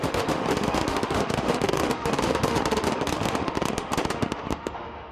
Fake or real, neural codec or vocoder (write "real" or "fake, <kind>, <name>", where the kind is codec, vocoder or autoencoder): fake, autoencoder, DAC-VAE